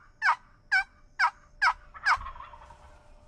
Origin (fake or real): real